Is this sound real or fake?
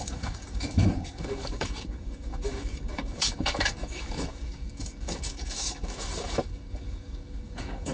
fake